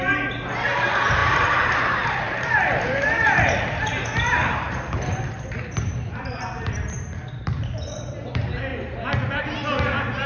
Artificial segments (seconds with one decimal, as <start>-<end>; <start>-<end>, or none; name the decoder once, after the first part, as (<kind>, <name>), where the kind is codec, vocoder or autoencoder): 0.0-8.7 (vocoder, BigVGAN v2)